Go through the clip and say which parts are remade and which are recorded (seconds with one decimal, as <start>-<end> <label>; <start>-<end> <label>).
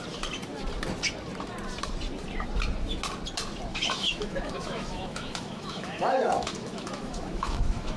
0.0-3.7 recorded; 3.7-8.0 remade